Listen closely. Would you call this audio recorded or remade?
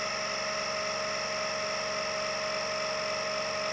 recorded